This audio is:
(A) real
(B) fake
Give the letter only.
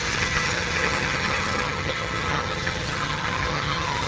B